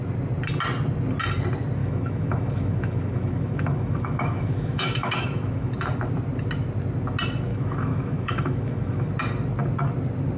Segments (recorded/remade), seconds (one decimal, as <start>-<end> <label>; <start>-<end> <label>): 0.0-1.8 recorded; 1.8-5.7 remade; 5.7-7.5 recorded; 7.5-9.1 remade; 9.1-10.4 recorded

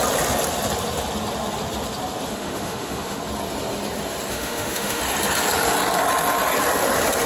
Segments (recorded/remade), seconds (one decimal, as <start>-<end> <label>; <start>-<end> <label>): 0.0-2.3 recorded; 2.3-3.2 remade; 3.2-4.3 recorded; 4.3-5.0 remade; 5.0-7.3 recorded

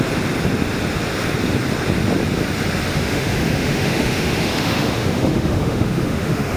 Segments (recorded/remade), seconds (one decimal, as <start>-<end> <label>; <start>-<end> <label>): 0.0-2.9 recorded; 2.9-6.6 remade